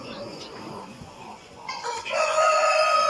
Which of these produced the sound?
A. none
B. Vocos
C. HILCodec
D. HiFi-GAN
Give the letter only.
B